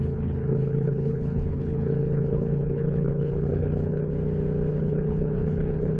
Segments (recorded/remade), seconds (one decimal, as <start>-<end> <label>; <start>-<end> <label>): 0.0-4.1 remade; 4.1-4.7 recorded; 4.7-6.0 remade